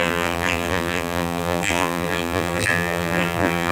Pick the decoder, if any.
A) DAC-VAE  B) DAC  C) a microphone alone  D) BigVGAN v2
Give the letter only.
D